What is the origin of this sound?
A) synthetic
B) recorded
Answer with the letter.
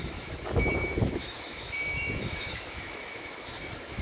A